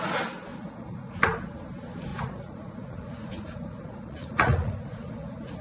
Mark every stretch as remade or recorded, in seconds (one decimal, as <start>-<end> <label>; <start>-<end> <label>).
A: 0.0-0.5 recorded; 0.5-1.2 remade; 1.2-2.1 recorded; 2.1-5.6 remade